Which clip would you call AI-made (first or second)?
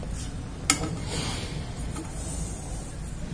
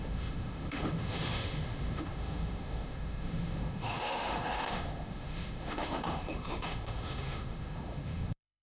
second